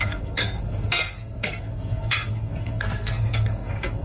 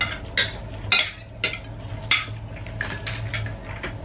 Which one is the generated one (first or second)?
first